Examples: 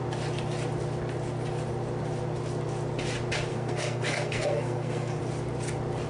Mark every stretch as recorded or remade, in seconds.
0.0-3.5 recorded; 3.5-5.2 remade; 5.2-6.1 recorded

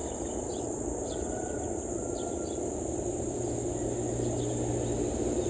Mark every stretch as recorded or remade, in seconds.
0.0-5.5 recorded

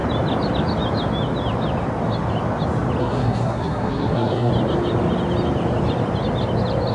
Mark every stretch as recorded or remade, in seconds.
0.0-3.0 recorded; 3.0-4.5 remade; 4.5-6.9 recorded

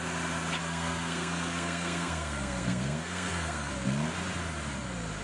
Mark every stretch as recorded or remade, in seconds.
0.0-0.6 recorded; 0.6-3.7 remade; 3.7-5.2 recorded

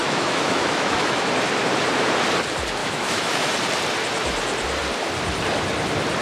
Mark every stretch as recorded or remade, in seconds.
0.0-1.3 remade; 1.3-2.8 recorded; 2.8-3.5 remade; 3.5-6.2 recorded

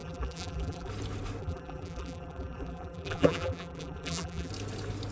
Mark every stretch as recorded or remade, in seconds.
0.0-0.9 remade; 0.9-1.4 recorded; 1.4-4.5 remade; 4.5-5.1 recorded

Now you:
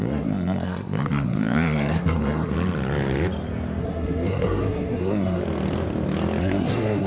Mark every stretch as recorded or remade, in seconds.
0.0-2.5 remade; 2.5-3.8 recorded; 3.8-5.4 remade; 5.4-6.4 recorded; 6.4-7.1 remade

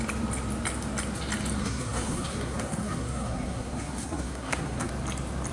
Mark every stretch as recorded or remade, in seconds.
0.0-1.6 recorded; 1.6-4.9 remade; 4.9-5.5 recorded